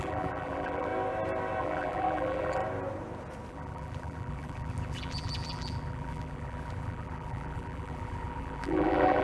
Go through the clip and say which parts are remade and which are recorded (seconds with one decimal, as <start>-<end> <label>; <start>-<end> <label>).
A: 0.0-0.9 remade; 0.9-1.6 recorded; 1.6-2.6 remade; 2.6-3.5 recorded; 3.5-9.2 remade